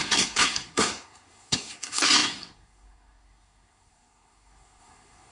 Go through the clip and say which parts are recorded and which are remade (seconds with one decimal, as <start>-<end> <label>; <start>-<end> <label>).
0.0-5.3 remade